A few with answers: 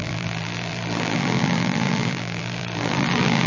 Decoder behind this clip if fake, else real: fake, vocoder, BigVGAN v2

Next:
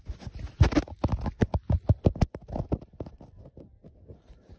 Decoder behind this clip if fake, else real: real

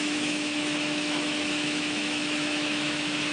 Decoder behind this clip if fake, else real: fake, autoencoder, DAC-VAE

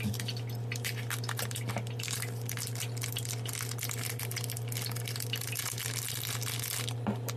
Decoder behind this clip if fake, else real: real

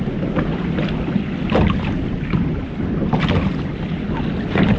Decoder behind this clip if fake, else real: real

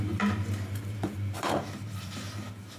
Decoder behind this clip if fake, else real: fake, vocoder, BigVGAN v2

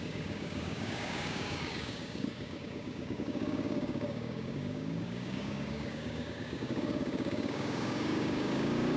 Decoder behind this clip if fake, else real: fake, codec, DAC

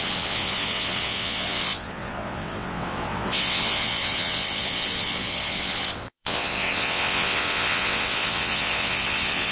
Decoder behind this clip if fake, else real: fake, vocoder, WaveNeXt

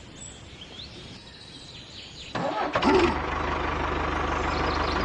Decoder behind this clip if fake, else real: real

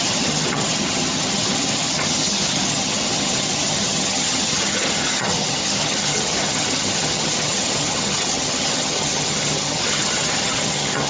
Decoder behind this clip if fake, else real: fake, vocoder, HiFi-GAN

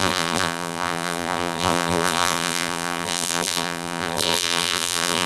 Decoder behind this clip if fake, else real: fake, vocoder, BigVGAN v2